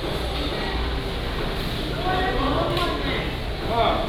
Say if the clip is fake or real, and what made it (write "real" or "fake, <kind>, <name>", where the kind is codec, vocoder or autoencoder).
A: real